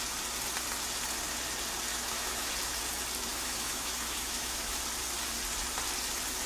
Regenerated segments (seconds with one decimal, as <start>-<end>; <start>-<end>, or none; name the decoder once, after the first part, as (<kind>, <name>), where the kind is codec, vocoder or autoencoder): 1.9-2.5 (autoencoder, DAC-VAE); 3.3-4.8